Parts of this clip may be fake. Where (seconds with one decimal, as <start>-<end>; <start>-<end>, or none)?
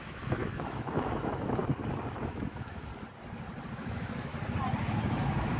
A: 0.0-1.6; 2.2-2.9; 3.7-4.3; 4.8-5.6